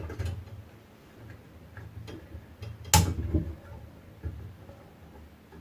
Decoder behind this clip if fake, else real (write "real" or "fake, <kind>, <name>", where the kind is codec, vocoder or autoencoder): real